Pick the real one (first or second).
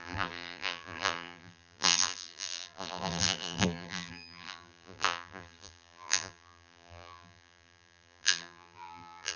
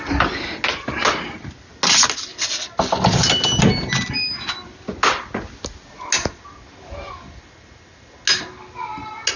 second